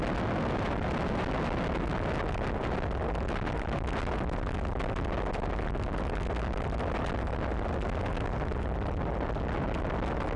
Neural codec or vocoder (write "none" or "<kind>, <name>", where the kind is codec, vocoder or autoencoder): none